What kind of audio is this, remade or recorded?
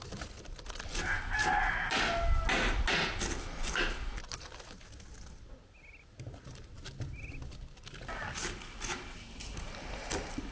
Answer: recorded